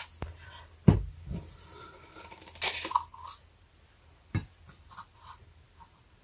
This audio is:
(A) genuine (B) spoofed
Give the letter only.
B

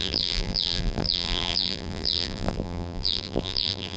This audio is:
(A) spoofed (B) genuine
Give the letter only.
A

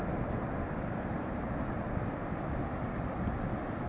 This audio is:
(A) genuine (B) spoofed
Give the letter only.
A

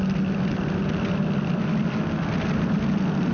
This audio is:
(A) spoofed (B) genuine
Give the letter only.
B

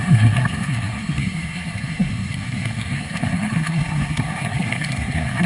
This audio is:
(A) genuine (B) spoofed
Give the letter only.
B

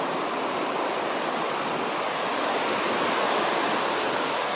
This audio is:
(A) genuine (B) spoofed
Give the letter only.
A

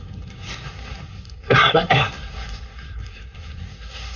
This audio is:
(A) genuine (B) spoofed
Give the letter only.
B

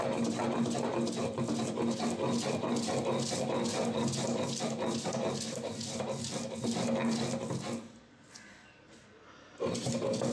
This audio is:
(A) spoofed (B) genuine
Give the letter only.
B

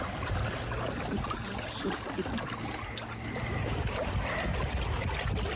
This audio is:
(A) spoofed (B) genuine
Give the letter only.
B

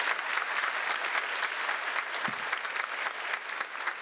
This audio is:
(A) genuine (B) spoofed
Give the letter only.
A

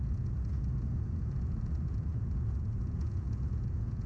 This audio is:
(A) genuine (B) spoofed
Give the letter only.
B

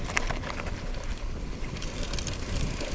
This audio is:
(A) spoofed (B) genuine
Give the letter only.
B